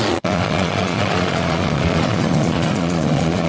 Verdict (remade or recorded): remade